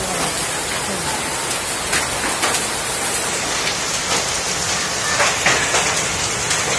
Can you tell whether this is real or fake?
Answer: real